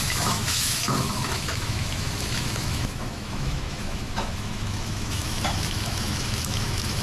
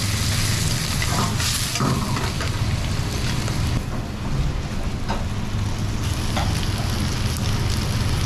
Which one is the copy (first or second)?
first